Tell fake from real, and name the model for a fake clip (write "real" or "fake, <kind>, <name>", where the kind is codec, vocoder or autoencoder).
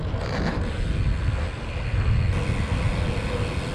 real